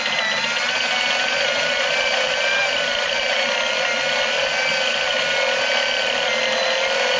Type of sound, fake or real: real